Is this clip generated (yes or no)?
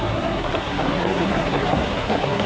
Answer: yes